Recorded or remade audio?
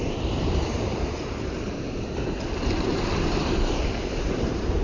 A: remade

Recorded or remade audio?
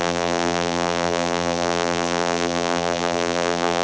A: remade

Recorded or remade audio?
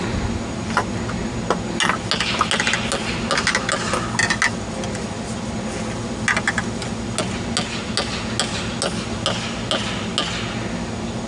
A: recorded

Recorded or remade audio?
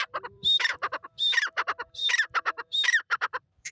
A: remade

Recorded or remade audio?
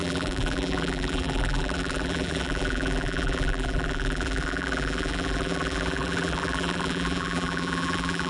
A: remade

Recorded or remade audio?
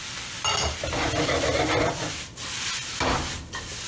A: recorded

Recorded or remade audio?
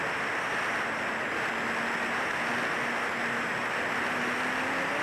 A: recorded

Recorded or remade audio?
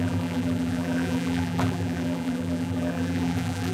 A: remade